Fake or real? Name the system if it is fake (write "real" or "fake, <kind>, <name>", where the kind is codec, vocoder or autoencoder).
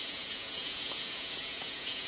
fake, vocoder, Vocos